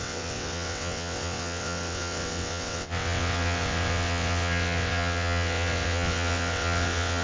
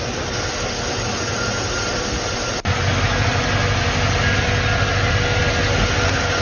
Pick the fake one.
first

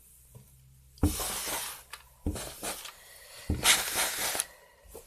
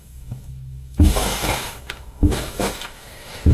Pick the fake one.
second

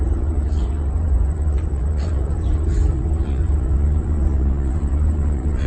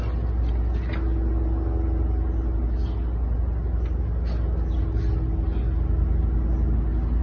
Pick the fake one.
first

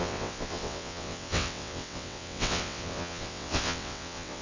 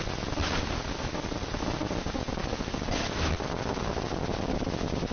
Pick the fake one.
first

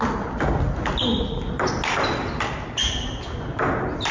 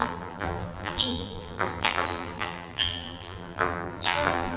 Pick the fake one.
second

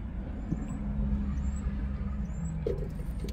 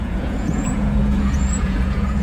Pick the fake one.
second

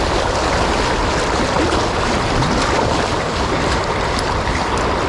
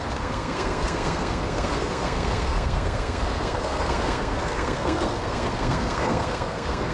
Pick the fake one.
second